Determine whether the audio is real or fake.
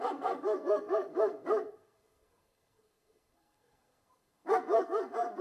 fake